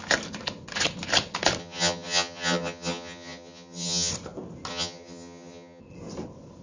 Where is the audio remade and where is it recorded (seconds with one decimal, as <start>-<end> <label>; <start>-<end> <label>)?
0.0-1.6 recorded; 1.6-4.1 remade; 4.1-4.7 recorded; 4.7-5.8 remade; 5.8-6.6 recorded